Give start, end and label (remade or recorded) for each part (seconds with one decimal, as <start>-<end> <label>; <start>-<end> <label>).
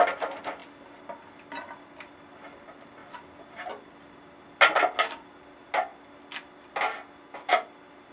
0.0-3.0 recorded; 3.0-3.8 remade; 3.8-8.1 recorded